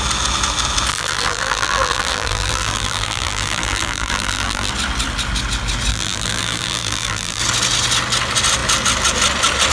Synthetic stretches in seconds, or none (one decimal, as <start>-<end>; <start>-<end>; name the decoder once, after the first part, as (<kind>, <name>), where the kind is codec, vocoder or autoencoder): 0.9-4.7 (vocoder, BigVGAN v2); 5.9-7.4